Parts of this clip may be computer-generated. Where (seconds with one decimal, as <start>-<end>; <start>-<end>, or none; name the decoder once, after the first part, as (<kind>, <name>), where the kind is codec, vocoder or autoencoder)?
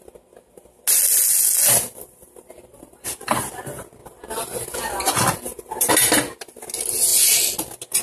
2.7-3.6 (vocoder, BigVGAN v2)